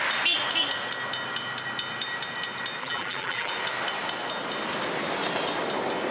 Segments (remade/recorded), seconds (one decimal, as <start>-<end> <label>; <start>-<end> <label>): 0.0-2.8 recorded; 2.8-3.5 remade; 3.5-6.1 recorded